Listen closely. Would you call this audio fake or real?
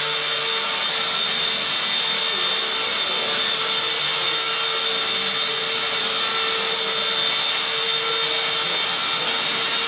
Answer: real